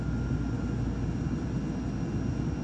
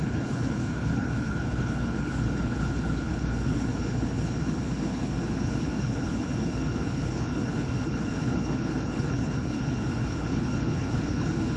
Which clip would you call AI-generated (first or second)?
second